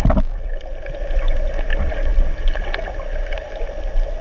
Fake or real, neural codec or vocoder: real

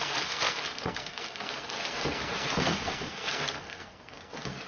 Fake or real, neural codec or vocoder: fake, codec, SNAC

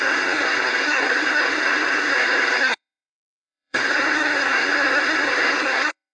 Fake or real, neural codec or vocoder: fake, codec, SNAC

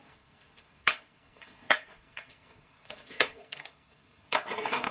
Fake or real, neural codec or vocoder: fake, codec, SNAC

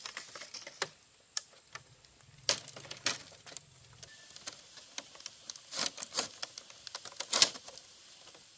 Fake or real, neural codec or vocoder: real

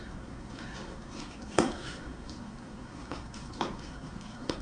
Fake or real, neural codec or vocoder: fake, codec, SNAC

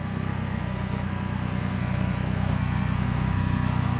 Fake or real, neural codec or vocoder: fake, codec, SNAC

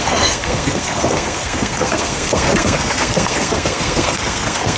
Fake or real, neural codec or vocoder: fake, codec, SNAC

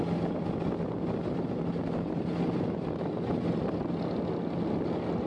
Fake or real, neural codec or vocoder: real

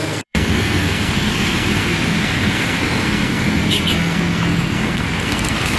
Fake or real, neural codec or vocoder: fake, codec, SNAC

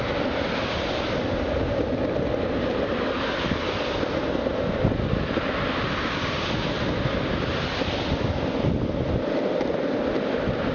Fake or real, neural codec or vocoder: real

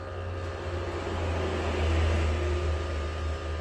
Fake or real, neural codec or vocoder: real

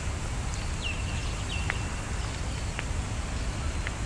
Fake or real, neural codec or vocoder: real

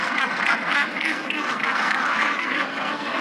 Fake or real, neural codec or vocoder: fake, codec, SNAC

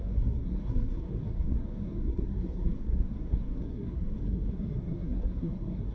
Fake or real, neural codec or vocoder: fake, codec, SNAC